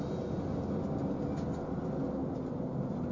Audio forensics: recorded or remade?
recorded